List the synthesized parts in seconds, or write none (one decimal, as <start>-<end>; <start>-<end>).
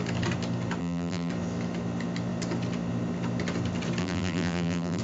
0.8-1.3; 4.0-5.0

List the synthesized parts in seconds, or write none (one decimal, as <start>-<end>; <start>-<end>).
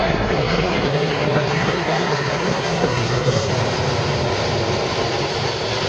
0.0-3.5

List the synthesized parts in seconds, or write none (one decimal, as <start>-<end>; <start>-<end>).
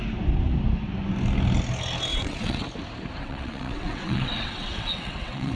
2.1-2.6; 3.2-5.6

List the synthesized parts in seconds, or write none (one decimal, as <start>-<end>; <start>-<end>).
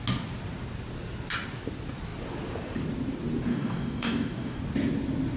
3.5-4.6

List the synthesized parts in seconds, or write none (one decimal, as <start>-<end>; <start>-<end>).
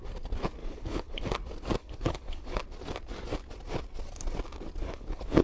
0.6-1.2; 1.8-2.6; 4.8-5.4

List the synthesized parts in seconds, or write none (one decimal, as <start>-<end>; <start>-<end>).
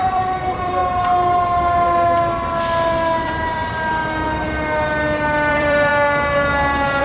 0.0-0.8; 3.2-3.6; 5.5-5.9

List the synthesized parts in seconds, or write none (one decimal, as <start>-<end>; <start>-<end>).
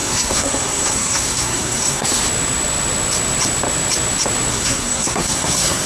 0.0-2.2; 4.5-5.9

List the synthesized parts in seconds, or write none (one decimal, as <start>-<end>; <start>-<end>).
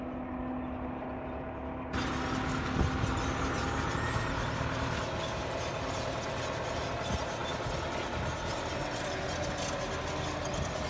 none